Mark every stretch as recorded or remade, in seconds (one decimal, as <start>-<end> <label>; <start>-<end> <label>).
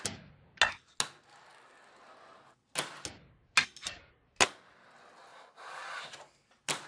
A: 0.0-5.3 recorded; 5.3-6.0 remade; 6.0-6.9 recorded